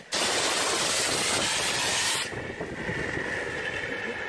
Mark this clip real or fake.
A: real